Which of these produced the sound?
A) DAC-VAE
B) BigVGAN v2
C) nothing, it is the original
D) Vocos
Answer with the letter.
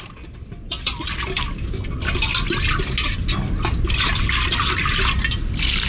C